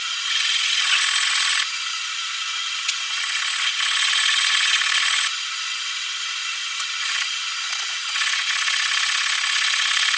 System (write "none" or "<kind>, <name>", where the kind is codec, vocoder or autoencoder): vocoder, Vocos